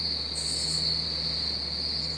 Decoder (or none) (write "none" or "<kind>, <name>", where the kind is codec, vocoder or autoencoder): none